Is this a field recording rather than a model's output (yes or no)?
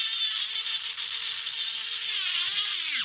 yes